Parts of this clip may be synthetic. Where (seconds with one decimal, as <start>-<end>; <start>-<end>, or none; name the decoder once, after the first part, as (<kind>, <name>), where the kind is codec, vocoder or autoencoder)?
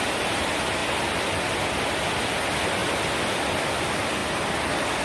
none